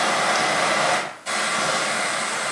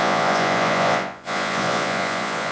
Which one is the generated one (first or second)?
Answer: second